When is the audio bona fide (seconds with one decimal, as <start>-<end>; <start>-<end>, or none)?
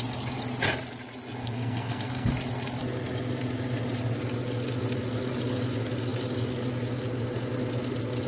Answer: 0.0-1.4; 2.3-8.3